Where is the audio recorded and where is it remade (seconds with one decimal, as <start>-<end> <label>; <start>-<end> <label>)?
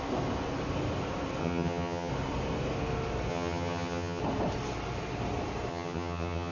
0.0-1.4 recorded; 1.4-2.1 remade; 2.1-3.3 recorded; 3.3-4.2 remade; 4.2-5.7 recorded; 5.7-6.5 remade